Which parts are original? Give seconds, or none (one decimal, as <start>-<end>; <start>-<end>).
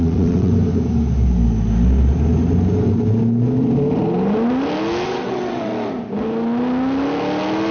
0.5-5.1; 5.7-7.7